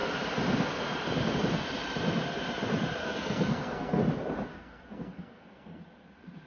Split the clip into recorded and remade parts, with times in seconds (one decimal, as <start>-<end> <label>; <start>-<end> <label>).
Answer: 0.0-3.0 recorded; 3.0-4.0 remade; 4.0-4.5 recorded; 4.5-5.8 remade; 5.8-6.5 recorded